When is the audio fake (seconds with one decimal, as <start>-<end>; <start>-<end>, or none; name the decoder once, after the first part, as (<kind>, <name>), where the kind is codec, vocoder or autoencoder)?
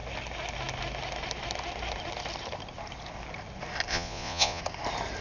3.9-4.6 (vocoder, Vocos)